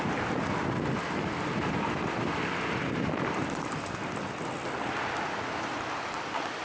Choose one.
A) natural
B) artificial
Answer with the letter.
A